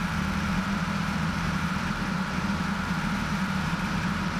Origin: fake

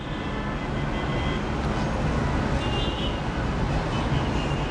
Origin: real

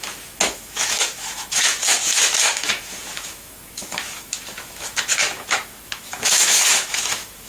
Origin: fake